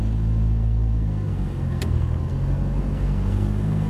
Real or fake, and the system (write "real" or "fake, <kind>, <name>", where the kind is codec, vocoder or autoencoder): fake, codec, SNAC